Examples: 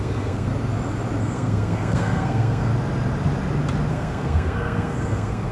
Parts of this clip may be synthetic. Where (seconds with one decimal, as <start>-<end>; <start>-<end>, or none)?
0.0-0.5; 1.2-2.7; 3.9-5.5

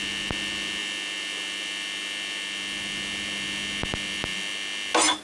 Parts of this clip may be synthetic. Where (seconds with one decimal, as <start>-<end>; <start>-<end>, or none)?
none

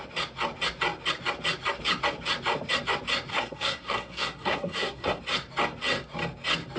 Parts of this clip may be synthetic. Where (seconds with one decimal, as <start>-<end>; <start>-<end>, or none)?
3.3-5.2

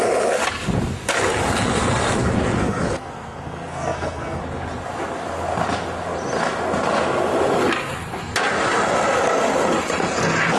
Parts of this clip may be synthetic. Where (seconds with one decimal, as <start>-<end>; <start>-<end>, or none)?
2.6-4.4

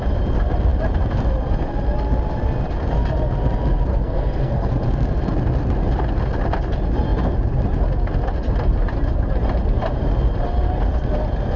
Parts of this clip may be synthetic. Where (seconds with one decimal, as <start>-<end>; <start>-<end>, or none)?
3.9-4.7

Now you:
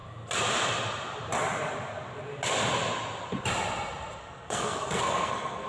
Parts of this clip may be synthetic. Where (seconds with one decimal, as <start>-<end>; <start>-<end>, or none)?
4.2-5.7